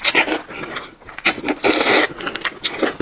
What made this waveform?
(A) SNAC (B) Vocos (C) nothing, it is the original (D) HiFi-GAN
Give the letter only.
C